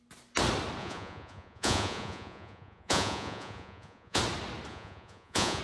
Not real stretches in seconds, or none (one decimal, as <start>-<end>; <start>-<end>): 0.8-4.2; 4.7-5.6

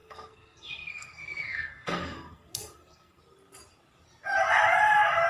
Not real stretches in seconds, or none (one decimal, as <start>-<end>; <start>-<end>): 0.0-3.2

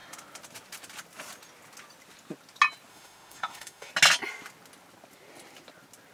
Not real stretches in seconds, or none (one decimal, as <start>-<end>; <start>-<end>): 2.9-3.9

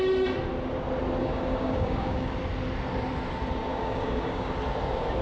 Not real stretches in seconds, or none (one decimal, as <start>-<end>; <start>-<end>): 1.2-2.3; 3.7-4.5

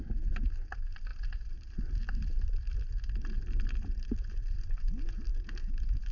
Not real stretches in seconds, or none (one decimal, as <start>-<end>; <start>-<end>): 1.1-4.8; 5.3-6.1

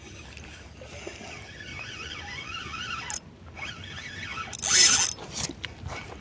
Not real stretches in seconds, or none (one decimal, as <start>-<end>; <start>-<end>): 1.7-2.8